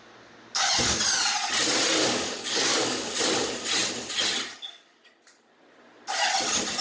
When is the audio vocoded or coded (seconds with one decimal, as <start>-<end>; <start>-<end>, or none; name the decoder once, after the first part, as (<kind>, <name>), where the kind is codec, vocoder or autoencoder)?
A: 2.0-3.2 (codec, DAC)